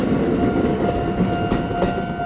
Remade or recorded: recorded